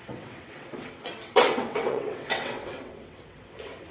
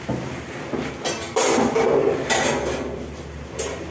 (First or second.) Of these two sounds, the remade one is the first